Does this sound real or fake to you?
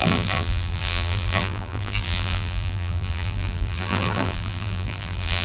fake